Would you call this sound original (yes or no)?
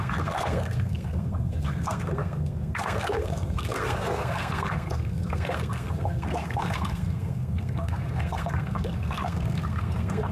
no